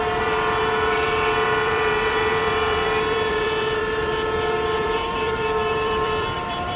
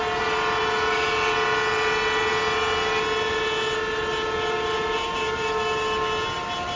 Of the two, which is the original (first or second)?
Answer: second